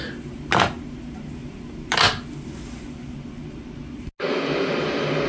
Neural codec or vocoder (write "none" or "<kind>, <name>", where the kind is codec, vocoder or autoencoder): none